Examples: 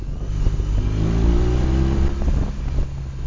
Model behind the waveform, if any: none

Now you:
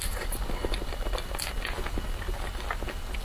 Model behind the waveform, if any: none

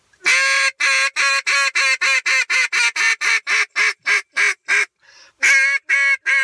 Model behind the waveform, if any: none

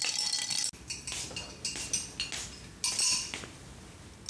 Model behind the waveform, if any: none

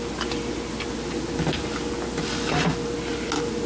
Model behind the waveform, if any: none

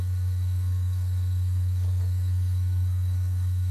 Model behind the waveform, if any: codec, SNAC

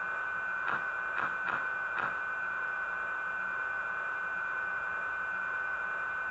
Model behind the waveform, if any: none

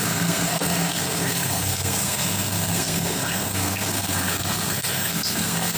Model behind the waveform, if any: codec, SNAC